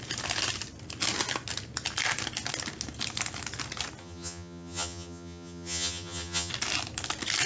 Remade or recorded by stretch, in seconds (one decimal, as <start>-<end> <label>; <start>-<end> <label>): 0.0-4.0 recorded; 4.0-6.5 remade; 6.5-7.5 recorded